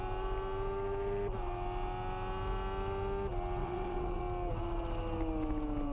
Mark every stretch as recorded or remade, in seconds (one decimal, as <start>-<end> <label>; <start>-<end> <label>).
0.0-3.6 recorded; 3.6-4.2 remade; 4.2-5.9 recorded